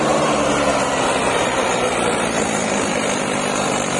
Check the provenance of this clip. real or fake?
fake